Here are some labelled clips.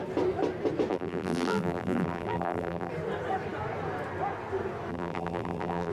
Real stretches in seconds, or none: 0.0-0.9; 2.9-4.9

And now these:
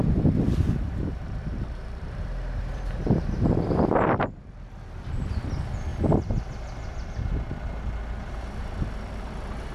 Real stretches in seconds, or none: 0.0-0.6; 4.2-5.9; 7.3-9.7

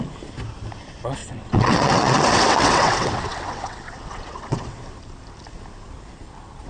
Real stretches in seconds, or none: 0.0-1.2; 4.8-6.7

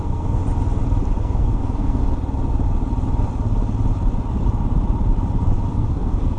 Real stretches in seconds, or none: 0.4-1.2; 2.0-5.7

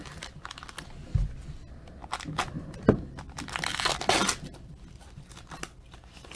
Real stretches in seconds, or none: 0.0-6.4

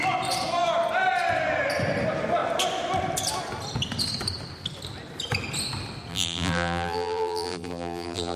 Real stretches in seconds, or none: 0.0-6.1

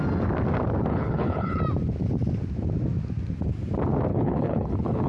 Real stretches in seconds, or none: 0.0-0.9; 1.6-4.1

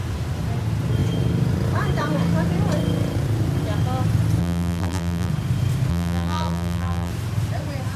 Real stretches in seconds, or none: 0.0-4.4; 5.3-5.9; 7.1-8.0